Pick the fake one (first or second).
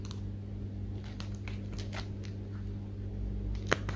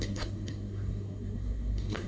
second